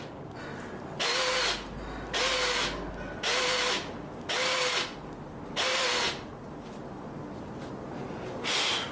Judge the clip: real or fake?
real